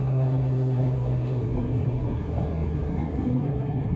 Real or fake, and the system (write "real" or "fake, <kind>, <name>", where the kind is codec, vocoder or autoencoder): fake, codec, SNAC